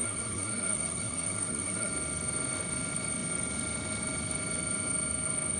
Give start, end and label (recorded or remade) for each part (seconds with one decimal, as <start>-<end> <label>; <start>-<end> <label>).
0.0-1.9 remade; 1.9-5.6 recorded